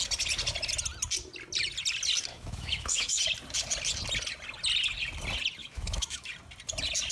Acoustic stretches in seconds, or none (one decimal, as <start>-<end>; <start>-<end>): 0.0-2.3; 3.2-5.6; 6.3-7.1